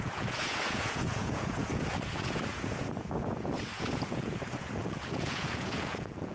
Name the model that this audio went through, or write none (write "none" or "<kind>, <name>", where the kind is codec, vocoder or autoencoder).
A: vocoder, Vocos